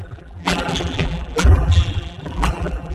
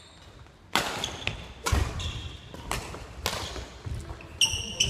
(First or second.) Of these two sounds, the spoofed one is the first